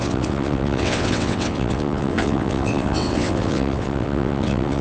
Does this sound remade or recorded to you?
remade